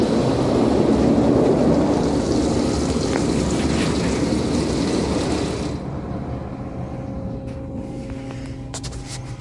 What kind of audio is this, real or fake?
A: real